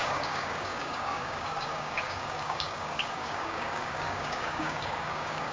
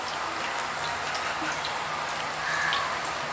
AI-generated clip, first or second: first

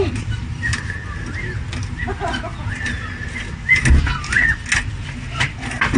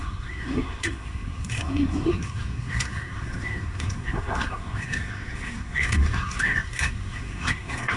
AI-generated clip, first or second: second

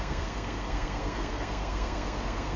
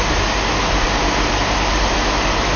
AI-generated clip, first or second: first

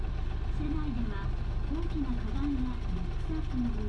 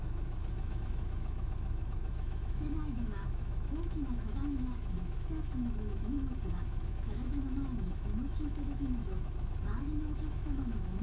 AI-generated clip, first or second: second